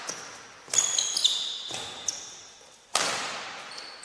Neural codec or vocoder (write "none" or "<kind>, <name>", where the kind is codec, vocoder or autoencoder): none